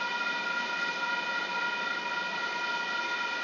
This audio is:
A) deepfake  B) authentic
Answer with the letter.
B